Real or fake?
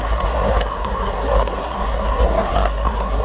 fake